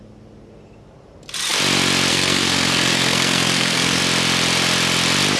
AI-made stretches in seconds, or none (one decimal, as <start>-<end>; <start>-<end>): 2.1-4.0